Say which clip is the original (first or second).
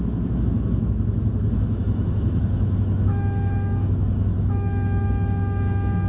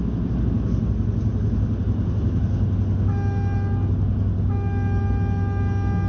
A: second